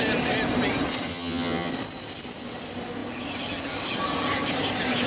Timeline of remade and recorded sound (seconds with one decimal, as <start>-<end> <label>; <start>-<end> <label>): 0.0-1.1 recorded; 1.1-1.7 remade; 1.7-5.1 recorded